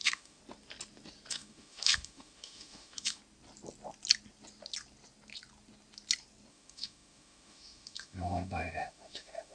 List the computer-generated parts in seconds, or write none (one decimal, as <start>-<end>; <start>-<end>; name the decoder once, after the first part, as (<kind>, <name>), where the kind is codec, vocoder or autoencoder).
0.0-0.4 (autoencoder, DAC-VAE); 1.3-3.2; 6.5-9.5